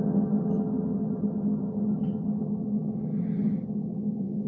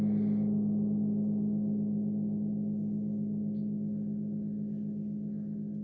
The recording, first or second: second